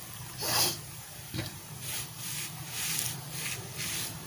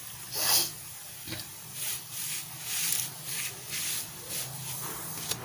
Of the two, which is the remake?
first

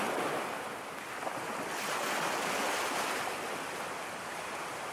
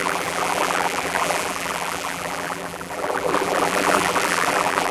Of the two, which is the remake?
second